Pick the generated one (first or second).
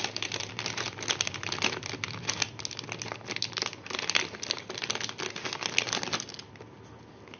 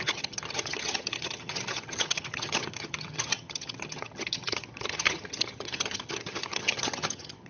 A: second